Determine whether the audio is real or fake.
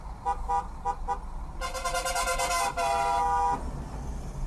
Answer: real